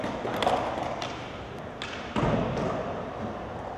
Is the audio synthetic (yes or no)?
no